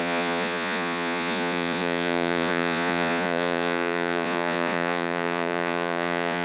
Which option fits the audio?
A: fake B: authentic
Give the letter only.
A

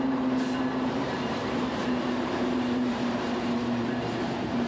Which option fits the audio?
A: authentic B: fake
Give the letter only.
B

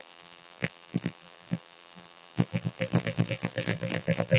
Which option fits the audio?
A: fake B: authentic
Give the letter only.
A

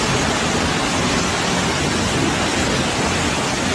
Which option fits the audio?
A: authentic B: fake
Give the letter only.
A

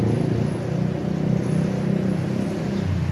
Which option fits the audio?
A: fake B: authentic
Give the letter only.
B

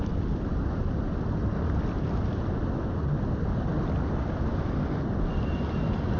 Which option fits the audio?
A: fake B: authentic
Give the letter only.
B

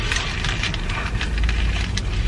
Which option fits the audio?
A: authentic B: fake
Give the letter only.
A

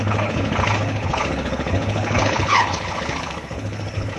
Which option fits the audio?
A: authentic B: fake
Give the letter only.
B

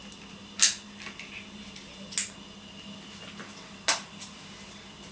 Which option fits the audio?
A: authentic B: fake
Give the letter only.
A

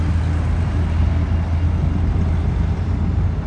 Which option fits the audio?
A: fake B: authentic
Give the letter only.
B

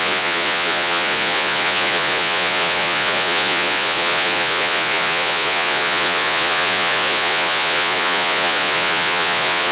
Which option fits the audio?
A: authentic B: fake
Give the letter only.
B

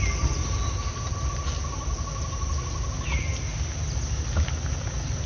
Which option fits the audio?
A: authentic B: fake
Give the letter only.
A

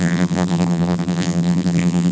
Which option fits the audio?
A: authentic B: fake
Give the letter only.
B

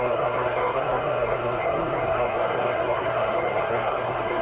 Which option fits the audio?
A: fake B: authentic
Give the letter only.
A